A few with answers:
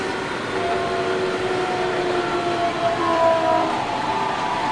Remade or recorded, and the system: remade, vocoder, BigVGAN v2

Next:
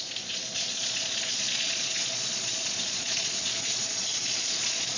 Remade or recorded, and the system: remade, vocoder, Vocos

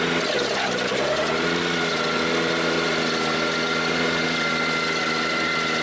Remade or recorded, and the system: recorded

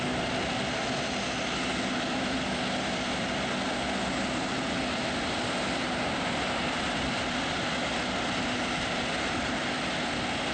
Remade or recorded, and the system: recorded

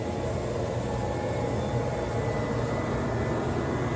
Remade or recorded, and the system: recorded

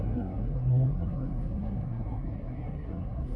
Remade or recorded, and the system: remade, codec, SNAC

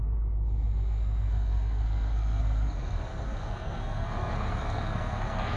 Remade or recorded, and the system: remade, codec, SNAC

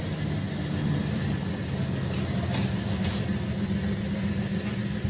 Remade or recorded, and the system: recorded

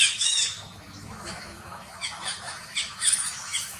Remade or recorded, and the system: remade, autoencoder, DAC-VAE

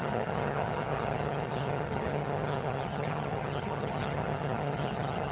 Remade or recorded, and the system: remade, vocoder, HiFi-GAN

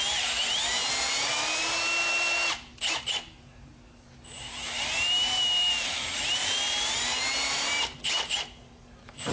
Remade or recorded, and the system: recorded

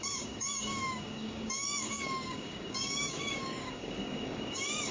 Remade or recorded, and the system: remade, codec, DAC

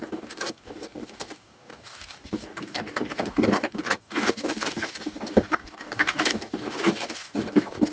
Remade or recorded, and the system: remade, codec, DAC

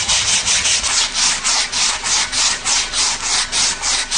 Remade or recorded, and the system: recorded